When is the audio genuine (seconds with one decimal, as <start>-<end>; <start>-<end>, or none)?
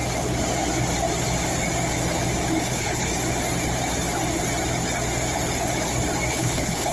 0.0-2.6; 3.1-6.3